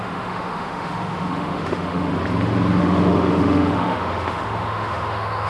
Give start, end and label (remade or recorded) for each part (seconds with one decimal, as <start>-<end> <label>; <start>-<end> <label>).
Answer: 0.0-2.1 remade; 2.1-2.8 recorded; 2.8-5.5 remade